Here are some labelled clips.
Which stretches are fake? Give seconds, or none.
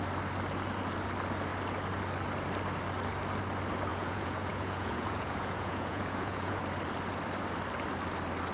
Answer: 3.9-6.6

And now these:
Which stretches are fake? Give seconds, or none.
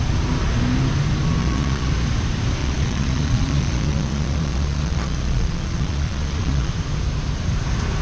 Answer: 1.4-1.9; 2.6-6.7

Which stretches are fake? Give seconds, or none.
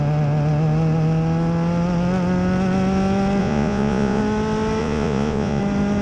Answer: 3.4-4.2; 4.8-5.6